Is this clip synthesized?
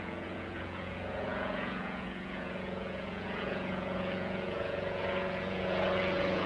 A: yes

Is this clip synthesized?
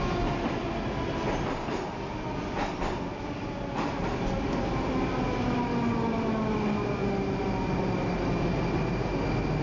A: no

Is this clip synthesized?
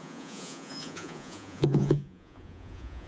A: yes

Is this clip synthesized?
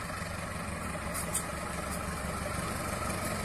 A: no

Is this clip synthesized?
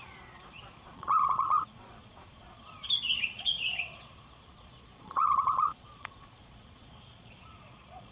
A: yes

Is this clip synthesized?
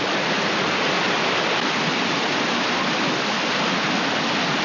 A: no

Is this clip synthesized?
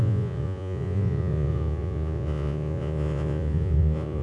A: yes